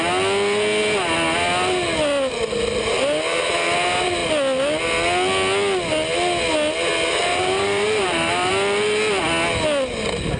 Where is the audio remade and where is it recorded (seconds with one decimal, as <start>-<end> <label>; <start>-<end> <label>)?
0.0-7.3 recorded; 7.3-8.5 remade; 8.5-10.4 recorded